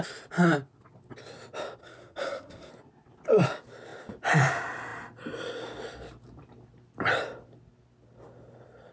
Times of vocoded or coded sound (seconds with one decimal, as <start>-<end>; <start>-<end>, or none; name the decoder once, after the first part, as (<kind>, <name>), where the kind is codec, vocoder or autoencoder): 1.8-2.7 (codec, SNAC)